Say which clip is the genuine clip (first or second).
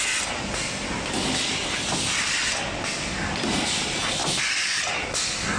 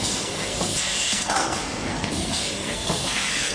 first